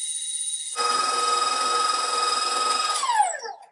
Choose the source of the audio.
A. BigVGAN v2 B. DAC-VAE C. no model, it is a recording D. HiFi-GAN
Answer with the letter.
C